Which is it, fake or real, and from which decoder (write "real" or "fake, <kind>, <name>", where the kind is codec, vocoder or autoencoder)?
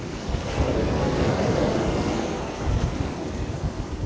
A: fake, codec, SNAC